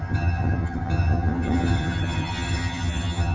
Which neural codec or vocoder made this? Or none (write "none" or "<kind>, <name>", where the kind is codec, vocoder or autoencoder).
vocoder, HiFi-GAN